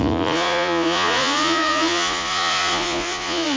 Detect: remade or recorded remade